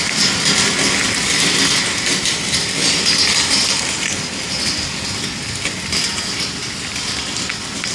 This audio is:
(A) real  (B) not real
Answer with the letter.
A